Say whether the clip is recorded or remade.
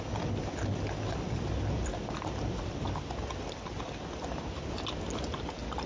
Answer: recorded